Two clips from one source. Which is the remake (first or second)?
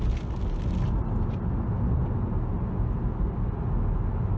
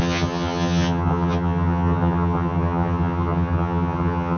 second